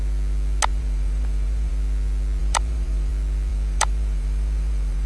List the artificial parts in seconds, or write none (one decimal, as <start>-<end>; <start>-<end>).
0.7-1.7; 2.4-3.1; 3.5-5.1